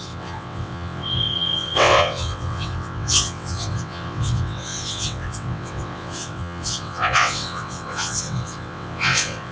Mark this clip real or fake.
fake